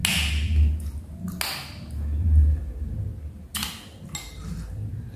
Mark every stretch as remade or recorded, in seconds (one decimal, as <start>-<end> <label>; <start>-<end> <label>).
0.0-5.2 recorded